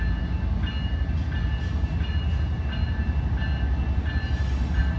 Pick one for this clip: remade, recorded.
recorded